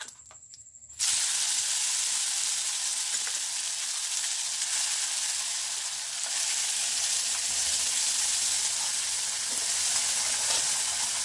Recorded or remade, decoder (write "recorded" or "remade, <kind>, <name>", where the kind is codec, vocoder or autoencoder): recorded